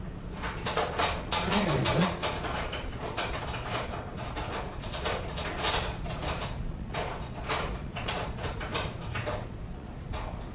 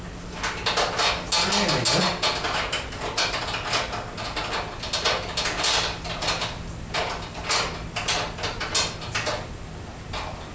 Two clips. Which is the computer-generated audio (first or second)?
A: first